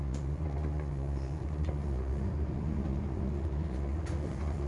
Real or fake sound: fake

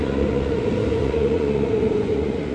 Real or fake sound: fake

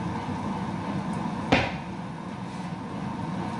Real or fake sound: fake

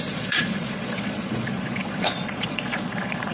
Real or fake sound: fake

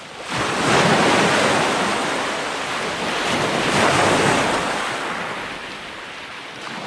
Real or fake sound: real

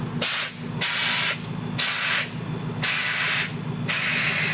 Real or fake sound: real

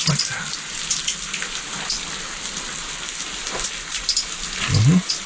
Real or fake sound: real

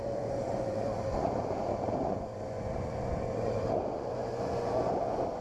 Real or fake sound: fake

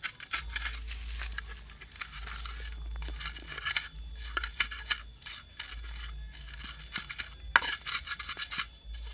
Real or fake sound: real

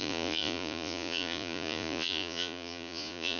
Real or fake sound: fake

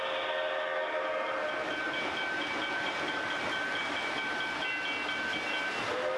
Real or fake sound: real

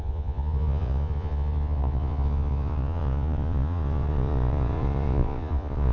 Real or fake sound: fake